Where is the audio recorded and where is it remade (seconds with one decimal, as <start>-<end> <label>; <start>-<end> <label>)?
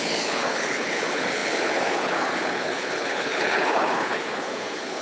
0.0-5.0 remade